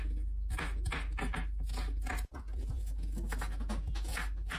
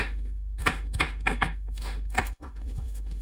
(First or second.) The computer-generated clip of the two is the second